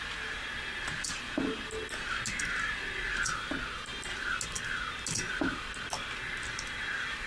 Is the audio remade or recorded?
recorded